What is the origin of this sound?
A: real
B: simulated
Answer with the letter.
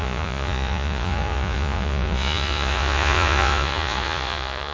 B